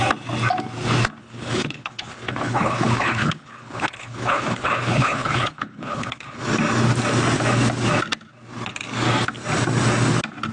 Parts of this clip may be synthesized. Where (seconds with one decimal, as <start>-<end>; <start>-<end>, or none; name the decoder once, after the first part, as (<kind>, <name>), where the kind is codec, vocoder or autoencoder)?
1.2-6.4 (codec, HILCodec)